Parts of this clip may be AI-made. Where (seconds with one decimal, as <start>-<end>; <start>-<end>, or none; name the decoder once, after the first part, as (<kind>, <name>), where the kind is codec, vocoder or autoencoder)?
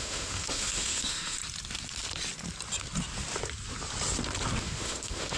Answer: 0.0-1.4 (autoencoder, DAC-VAE); 4.6-5.4